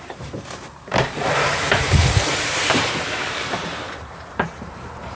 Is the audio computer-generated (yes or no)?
yes